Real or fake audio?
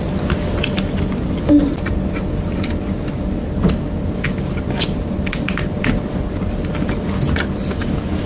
real